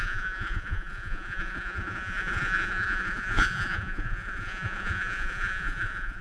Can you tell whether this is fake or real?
fake